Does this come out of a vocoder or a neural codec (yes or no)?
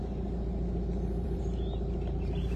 yes